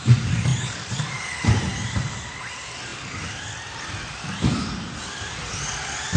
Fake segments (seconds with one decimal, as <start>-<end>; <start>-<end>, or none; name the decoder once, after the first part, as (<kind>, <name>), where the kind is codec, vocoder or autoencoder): none

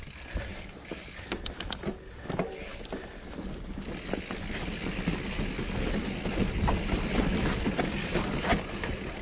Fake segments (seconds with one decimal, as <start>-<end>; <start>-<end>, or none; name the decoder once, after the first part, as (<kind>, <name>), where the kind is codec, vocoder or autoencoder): 0.5-1.4 (vocoder, BigVGAN v2)

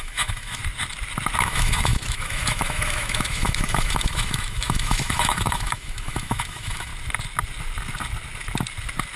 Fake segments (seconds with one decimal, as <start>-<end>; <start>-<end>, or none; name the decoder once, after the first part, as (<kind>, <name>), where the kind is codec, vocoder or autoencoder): 0.0-0.6 (autoencoder, DAC-VAE); 1.4-6.9

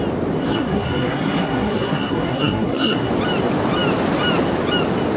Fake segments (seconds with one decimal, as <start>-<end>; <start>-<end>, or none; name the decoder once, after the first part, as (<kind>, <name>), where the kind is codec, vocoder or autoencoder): 0.4-3.1 (codec, SNAC)

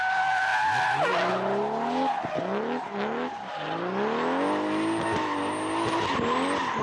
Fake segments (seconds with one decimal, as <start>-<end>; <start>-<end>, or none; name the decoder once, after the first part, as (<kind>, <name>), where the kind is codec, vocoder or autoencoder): none